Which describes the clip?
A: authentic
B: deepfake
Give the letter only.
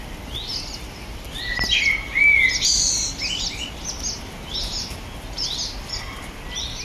A